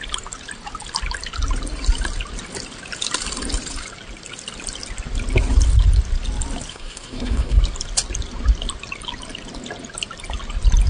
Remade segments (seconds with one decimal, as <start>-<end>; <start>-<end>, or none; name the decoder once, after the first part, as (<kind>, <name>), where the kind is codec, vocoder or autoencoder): 6.7-7.6 (codec, SNAC)